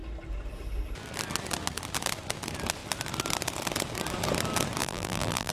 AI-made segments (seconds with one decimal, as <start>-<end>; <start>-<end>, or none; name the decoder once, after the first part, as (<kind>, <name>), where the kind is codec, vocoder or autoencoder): 4.8-5.5 (vocoder, BigVGAN v2)